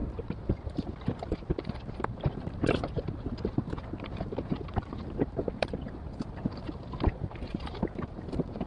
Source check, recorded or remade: remade